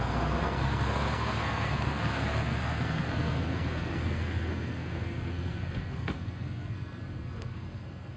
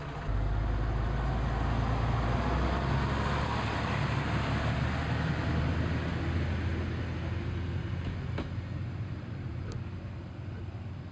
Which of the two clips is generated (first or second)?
first